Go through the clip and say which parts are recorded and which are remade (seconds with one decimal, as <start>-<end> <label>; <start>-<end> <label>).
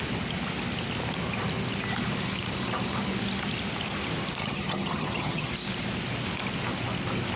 0.0-4.4 recorded; 4.4-5.5 remade; 5.5-7.4 recorded